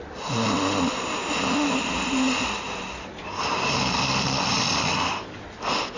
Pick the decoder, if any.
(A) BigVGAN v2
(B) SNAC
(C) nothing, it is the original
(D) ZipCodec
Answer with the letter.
C